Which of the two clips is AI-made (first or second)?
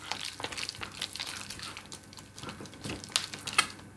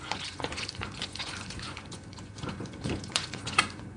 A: second